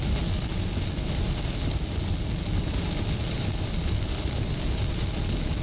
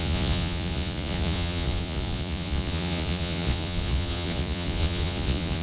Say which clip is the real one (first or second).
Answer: first